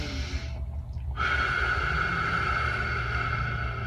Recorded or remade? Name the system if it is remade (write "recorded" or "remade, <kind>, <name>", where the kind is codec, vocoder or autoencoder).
recorded